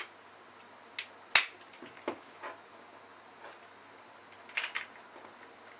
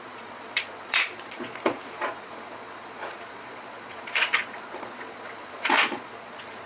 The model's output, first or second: second